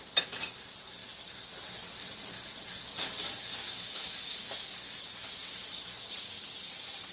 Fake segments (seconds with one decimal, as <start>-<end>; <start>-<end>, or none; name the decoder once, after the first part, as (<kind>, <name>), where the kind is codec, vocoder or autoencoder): 2.8-5.0 (codec, DAC)